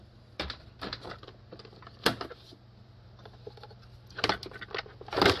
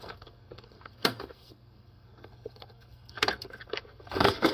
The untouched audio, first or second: first